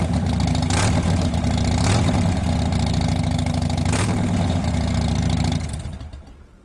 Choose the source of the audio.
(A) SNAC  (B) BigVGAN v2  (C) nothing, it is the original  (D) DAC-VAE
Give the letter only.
C